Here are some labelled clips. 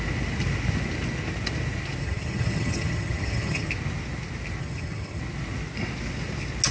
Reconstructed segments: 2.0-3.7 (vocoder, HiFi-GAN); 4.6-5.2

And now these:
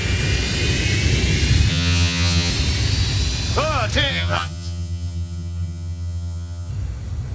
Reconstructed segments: 1.7-2.5 (vocoder, HiFi-GAN); 4.1-6.7

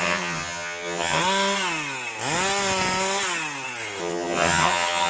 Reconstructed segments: 0.0-1.2 (vocoder, HiFi-GAN); 4.0-5.1

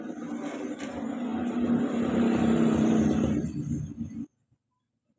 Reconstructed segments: none

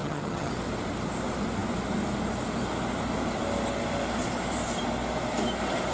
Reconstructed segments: 0.0-0.5 (vocoder, HiFi-GAN)

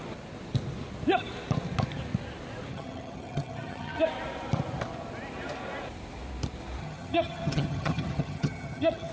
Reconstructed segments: 2.7-4.0 (vocoder, HiFi-GAN); 6.8-9.1

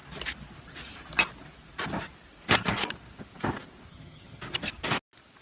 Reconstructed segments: 3.9-4.4 (vocoder, HiFi-GAN)

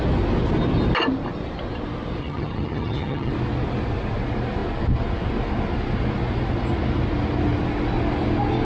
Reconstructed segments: 2.2-3.3 (vocoder, HiFi-GAN)